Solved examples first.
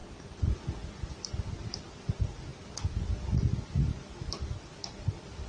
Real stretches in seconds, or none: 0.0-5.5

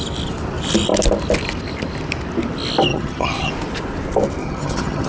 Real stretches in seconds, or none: 0.0-2.9; 3.5-4.4

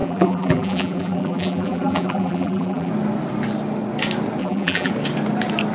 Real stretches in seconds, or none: 2.9-4.4; 4.9-5.7